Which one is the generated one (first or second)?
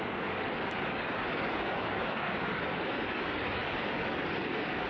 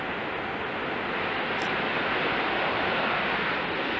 first